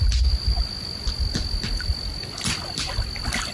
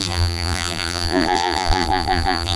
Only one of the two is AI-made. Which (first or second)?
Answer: second